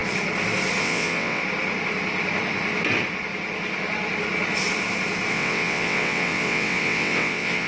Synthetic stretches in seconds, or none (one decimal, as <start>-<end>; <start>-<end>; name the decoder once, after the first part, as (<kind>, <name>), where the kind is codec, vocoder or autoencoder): 0.8-1.4 (vocoder, WaveNeXt); 5.3-7.7

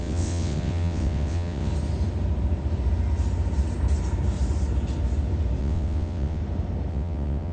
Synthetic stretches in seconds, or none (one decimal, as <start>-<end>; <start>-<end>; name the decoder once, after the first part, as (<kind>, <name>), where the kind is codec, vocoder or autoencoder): 0.0-1.7 (vocoder, WaveNeXt); 5.6-6.4; 6.9-7.5

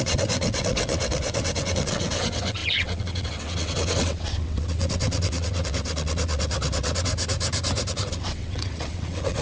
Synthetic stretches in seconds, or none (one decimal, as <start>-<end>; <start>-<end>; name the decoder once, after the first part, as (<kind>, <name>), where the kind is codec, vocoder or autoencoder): 0.0-7.1 (vocoder, WaveNeXt); 7.9-9.4

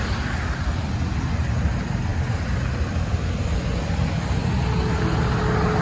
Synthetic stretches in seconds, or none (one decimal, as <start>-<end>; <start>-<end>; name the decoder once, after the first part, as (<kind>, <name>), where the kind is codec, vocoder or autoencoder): none

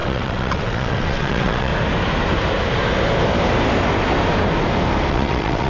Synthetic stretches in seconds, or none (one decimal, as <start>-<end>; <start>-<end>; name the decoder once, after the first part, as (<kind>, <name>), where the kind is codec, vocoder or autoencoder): 0.0-1.7 (vocoder, WaveNeXt); 5.1-5.7

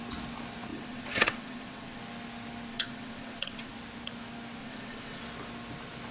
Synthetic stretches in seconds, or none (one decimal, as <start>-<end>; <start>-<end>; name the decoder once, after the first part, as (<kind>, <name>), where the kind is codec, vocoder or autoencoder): 0.7-2.0 (vocoder, WaveNeXt); 2.7-3.7; 4.6-5.2

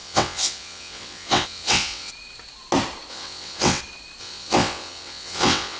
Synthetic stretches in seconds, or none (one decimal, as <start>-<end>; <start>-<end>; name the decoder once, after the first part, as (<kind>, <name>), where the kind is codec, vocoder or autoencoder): 0.0-2.1 (vocoder, WaveNeXt); 3.1-3.8; 4.2-5.8